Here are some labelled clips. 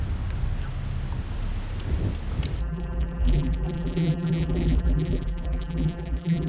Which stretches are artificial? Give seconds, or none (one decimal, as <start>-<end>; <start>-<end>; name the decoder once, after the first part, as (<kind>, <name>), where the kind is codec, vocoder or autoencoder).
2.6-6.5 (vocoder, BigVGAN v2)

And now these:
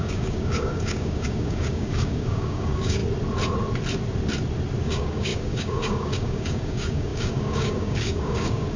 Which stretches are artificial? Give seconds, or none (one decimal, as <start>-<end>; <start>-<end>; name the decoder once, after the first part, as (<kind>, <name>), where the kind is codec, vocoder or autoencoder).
0.0-3.0 (codec, DAC); 4.8-8.8

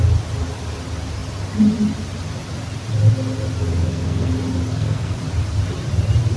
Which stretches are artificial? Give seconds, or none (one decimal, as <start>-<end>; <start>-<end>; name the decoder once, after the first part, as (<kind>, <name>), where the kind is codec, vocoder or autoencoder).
3.7-4.3 (codec, SNAC); 4.7-5.2

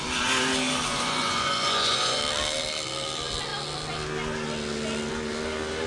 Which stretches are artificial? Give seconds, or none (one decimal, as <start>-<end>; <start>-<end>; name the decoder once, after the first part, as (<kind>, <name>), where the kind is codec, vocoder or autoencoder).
0.9-2.2 (vocoder, Vocos)

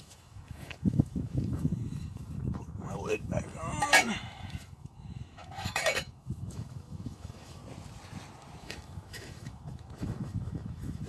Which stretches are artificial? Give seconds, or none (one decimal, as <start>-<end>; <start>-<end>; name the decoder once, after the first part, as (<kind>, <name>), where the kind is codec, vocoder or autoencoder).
0.0-7.6 (autoencoder, DAC-VAE); 8.6-11.1

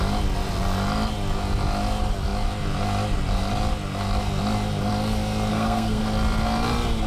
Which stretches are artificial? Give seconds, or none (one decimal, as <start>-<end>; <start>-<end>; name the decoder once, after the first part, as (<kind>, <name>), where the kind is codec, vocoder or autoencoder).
5.5-6.0 (codec, SNAC)